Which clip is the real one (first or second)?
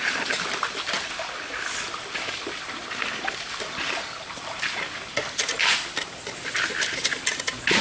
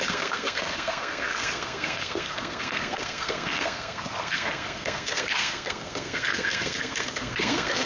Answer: first